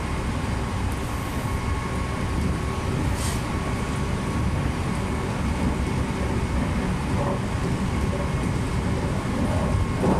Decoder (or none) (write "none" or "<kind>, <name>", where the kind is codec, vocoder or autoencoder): none